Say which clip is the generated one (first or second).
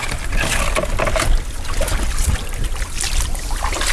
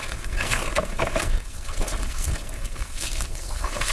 second